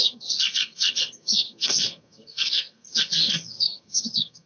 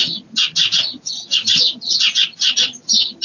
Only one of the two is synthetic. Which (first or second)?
first